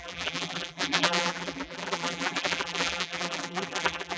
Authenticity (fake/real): fake